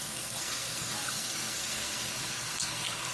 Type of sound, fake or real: fake